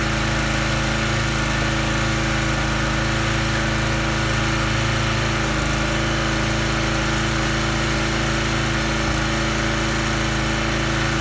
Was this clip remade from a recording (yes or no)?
no